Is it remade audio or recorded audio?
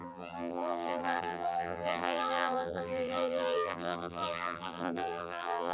remade